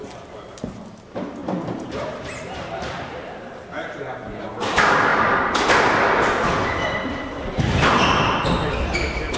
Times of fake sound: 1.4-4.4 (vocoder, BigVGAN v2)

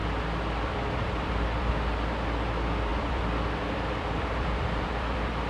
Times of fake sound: 0.0-1.7 (vocoder, BigVGAN v2); 2.9-5.5

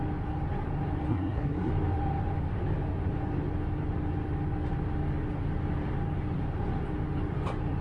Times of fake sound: 1.1-1.7 (codec, SNAC)

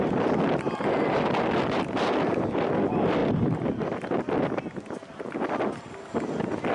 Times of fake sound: none

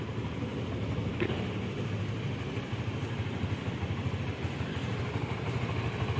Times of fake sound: none

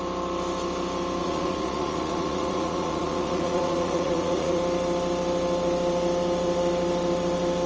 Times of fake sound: 1.2-4.6 (vocoder, Vocos)

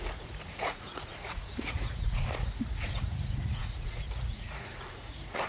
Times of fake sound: 0.0-5.5 (vocoder, Vocos)